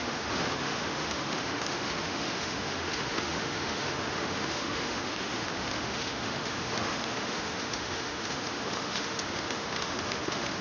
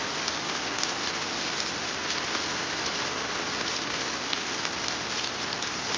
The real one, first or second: second